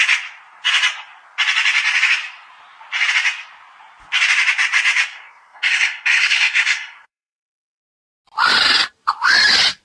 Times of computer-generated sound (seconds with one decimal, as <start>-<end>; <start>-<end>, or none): 5.1-7.8